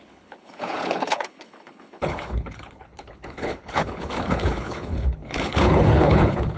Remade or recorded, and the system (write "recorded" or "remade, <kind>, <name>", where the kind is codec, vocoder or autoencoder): remade, codec, HILCodec